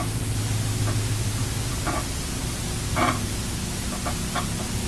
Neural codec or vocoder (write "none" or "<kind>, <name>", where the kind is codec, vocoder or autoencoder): none